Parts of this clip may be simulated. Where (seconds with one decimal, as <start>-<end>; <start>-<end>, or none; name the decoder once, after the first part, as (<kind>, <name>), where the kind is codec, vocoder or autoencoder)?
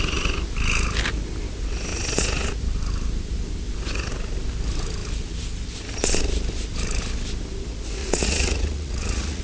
8.0-9.4 (vocoder, Vocos)